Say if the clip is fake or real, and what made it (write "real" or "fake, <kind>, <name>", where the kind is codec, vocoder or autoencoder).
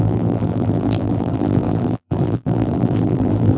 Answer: fake, vocoder, BigVGAN v2